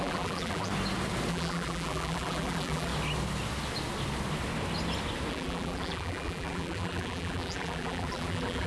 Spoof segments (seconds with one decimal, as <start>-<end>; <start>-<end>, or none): 0.0-0.7; 1.3-2.9; 5.3-8.7